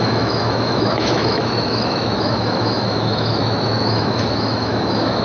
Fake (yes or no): yes